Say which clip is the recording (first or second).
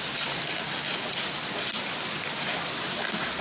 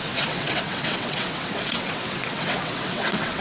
first